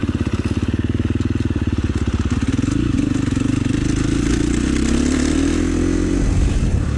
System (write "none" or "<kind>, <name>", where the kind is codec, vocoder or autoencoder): none